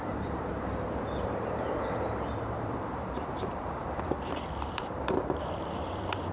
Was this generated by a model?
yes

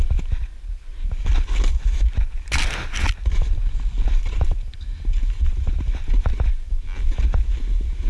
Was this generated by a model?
no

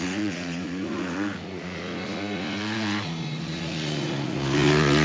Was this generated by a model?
yes